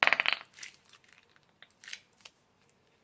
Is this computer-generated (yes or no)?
no